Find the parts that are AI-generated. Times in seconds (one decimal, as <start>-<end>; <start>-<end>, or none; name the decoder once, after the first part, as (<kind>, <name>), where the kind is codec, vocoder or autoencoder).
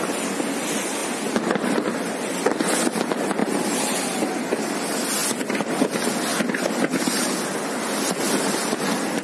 3.4-4.2 (vocoder, BigVGAN v2)